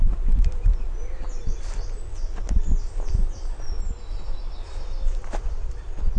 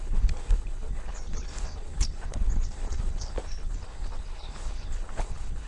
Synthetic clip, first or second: second